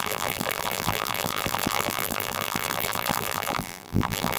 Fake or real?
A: fake